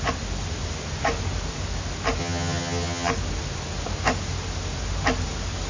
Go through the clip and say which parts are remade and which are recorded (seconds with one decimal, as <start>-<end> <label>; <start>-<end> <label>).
0.0-2.2 recorded; 2.2-3.1 remade; 3.1-5.7 recorded